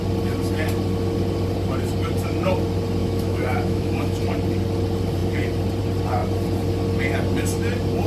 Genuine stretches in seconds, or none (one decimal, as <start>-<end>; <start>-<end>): 0.0-3.0; 4.2-8.1